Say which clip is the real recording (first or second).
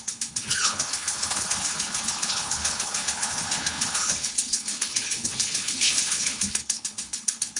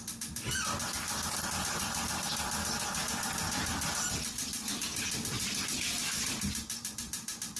second